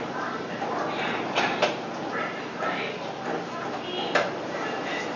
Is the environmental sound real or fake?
real